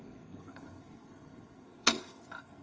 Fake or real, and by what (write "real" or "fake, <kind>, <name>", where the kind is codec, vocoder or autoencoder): fake, codec, SNAC